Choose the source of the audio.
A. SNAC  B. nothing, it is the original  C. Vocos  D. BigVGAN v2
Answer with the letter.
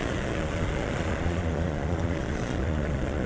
C